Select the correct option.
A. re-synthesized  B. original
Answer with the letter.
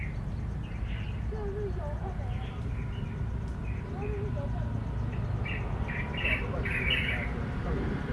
B